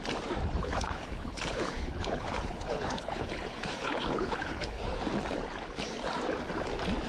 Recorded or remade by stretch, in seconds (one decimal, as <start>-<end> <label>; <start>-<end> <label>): 0.0-0.6 recorded; 0.6-4.8 remade; 4.8-7.1 recorded